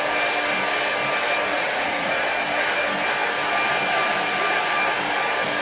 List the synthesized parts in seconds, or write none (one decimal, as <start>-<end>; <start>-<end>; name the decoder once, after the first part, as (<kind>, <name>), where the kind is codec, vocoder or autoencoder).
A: 1.5-2.1 (vocoder, Vocos)